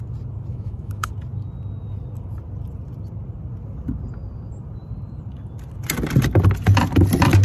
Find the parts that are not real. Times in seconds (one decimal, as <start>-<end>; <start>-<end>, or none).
0.5-1.1